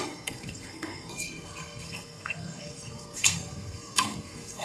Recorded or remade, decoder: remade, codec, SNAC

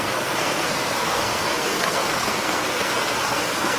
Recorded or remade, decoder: remade, codec, SNAC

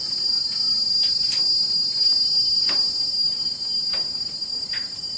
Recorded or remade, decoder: recorded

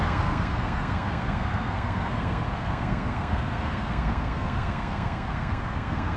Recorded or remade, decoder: remade, codec, SNAC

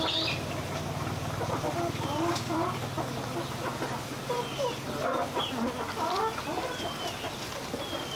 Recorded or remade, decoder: recorded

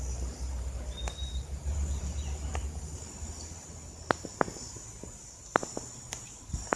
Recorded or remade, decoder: recorded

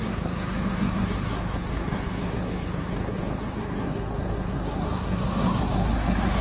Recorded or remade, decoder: remade, codec, SNAC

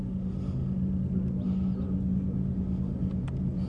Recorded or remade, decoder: recorded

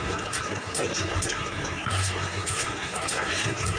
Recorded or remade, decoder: remade, codec, SNAC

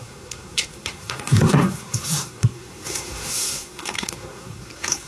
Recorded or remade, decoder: remade, codec, SNAC